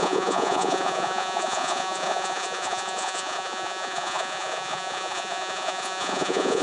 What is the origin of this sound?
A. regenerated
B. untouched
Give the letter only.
A